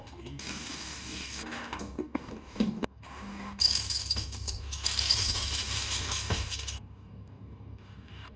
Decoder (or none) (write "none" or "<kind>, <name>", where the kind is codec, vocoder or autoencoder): codec, DAC